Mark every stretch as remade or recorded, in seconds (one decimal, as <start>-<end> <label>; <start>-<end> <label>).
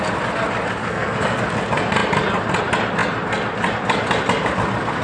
0.0-0.8 recorded; 0.8-1.4 remade; 1.4-5.0 recorded